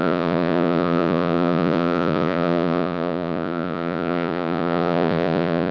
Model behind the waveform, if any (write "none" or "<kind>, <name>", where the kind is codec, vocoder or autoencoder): vocoder, Vocos